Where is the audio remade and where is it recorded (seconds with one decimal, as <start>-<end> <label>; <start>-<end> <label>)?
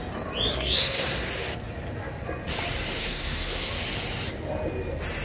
0.0-0.5 recorded; 0.5-1.3 remade; 1.3-3.0 recorded; 3.0-3.7 remade; 3.7-5.2 recorded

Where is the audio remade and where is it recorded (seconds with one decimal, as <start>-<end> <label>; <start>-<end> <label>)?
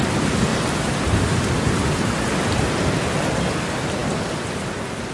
0.0-5.1 remade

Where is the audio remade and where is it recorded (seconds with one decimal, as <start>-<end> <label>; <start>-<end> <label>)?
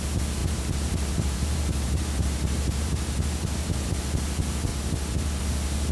0.0-0.4 recorded; 0.4-3.9 remade; 3.9-4.7 recorded; 4.7-5.4 remade; 5.4-5.9 recorded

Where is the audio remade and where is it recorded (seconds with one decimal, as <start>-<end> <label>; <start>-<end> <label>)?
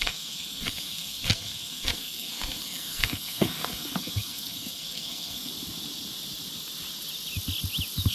0.0-5.5 remade; 5.5-8.1 recorded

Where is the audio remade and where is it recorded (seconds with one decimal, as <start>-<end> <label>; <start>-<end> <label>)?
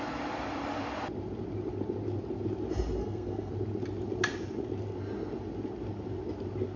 0.0-3.0 recorded; 3.0-3.5 remade; 3.5-6.8 recorded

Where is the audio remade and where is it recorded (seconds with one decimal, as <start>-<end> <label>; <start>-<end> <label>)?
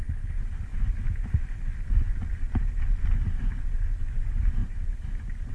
0.0-5.5 recorded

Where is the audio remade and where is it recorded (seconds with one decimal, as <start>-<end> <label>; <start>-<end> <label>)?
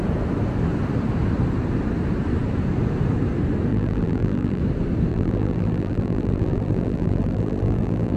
0.0-3.7 recorded; 3.7-4.6 remade; 4.6-5.1 recorded; 5.1-8.2 remade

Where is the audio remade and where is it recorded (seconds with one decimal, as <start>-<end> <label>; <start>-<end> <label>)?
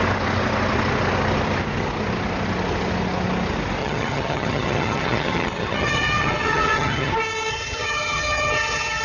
0.0-3.8 recorded; 3.8-7.1 remade; 7.1-7.5 recorded; 7.5-9.0 remade